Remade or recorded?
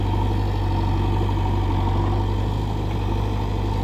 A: recorded